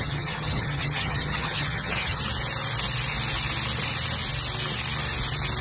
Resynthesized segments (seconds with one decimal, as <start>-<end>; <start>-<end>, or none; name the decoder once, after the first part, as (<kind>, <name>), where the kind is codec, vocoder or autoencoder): 0.0-2.2 (vocoder, HiFi-GAN)